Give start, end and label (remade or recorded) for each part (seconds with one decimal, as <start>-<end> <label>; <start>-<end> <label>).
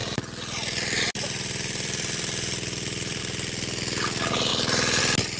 0.0-3.2 remade; 3.2-4.5 recorded; 4.5-5.0 remade; 5.0-5.4 recorded